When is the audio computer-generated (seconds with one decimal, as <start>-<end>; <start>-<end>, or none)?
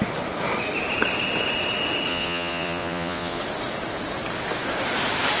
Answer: 2.1-3.4